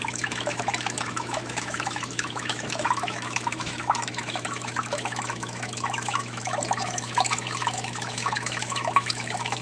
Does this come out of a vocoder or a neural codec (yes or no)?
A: yes